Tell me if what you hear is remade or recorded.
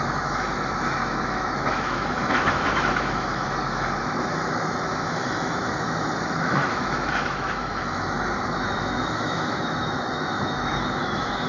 remade